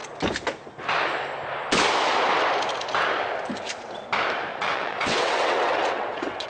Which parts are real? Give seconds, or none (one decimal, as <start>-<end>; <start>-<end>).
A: 0.0-4.5